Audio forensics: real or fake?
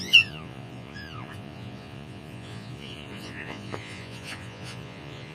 fake